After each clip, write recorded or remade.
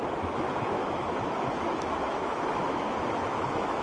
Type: remade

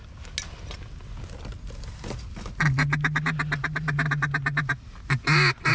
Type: recorded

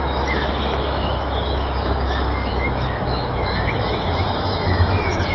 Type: remade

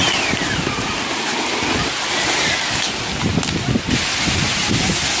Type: recorded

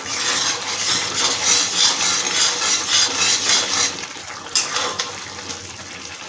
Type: recorded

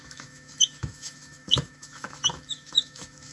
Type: remade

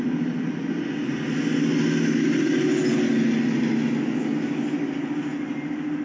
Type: recorded